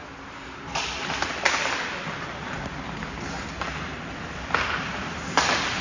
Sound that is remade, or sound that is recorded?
recorded